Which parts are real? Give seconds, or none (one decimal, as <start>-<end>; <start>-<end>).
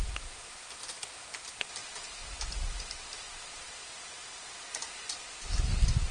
0.0-6.1